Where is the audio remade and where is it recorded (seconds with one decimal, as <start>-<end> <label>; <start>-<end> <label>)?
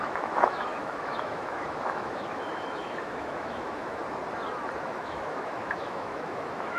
0.0-4.0 remade; 4.0-4.8 recorded; 4.8-6.8 remade